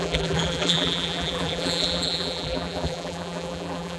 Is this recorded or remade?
remade